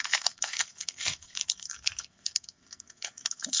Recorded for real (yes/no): no